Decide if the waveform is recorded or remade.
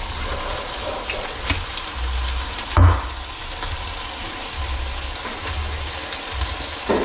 recorded